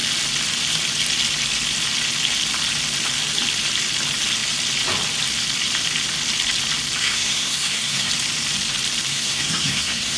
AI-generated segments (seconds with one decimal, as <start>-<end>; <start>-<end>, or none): 7.0-8.1; 9.1-10.2